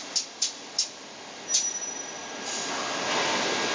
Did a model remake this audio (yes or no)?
no